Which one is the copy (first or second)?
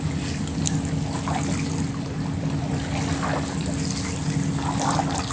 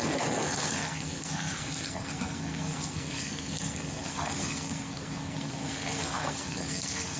second